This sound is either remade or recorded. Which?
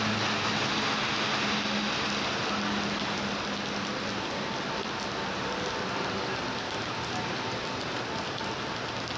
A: recorded